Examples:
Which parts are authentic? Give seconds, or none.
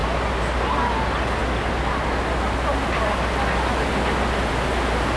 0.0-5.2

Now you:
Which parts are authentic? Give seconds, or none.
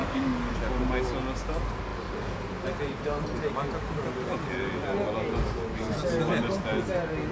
0.5-7.3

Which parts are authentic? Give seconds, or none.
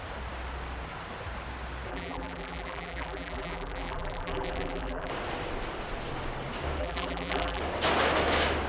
0.0-1.9; 5.1-6.8; 7.6-8.7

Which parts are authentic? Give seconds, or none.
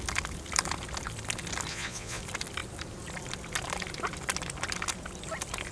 0.0-1.7; 2.2-5.7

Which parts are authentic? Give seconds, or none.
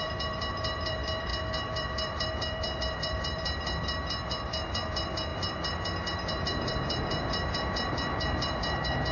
none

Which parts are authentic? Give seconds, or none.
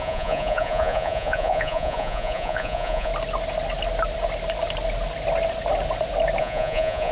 3.1-6.4